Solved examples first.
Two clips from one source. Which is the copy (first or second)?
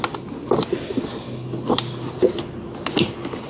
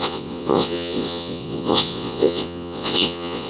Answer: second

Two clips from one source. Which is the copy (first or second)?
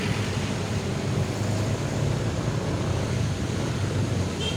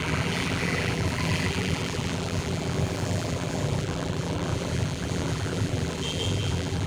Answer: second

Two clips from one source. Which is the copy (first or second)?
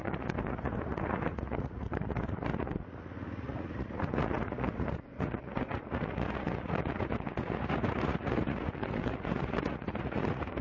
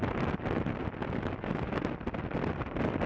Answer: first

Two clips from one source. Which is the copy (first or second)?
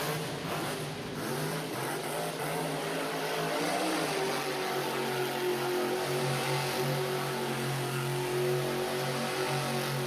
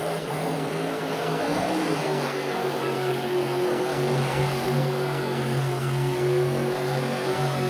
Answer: second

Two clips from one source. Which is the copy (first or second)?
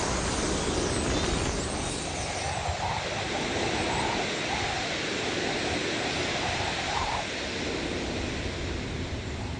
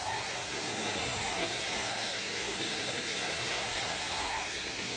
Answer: second